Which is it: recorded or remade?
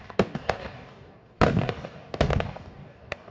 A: remade